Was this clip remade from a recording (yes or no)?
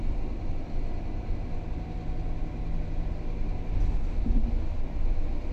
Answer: no